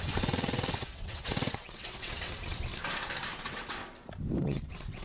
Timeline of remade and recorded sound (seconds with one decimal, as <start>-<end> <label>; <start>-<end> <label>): 0.0-2.7 remade; 2.7-3.4 recorded; 3.4-3.8 remade; 3.8-4.4 recorded; 4.4-5.0 remade